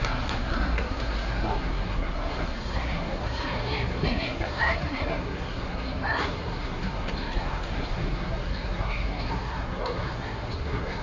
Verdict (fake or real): fake